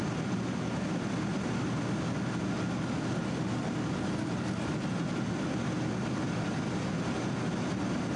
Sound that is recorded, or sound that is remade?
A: recorded